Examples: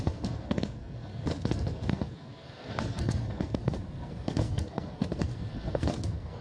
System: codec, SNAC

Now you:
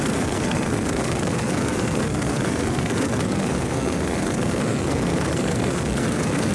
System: codec, SNAC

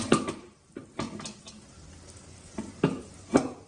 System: none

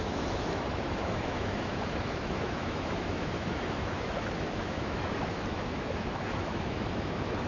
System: autoencoder, DAC-VAE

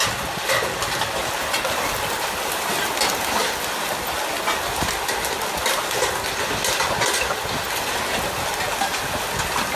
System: none